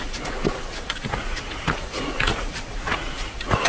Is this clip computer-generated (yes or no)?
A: yes